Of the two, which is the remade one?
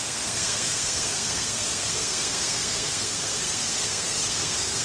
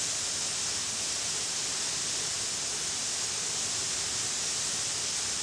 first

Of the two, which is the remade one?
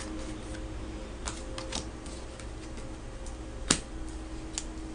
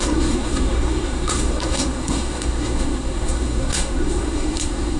second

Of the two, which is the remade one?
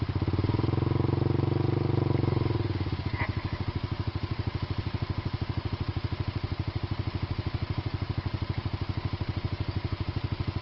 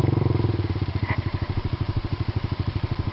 second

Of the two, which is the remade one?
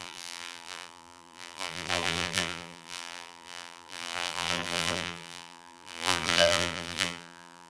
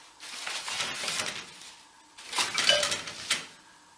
first